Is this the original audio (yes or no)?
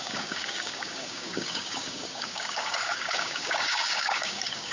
no